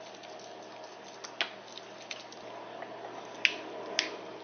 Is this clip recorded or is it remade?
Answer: recorded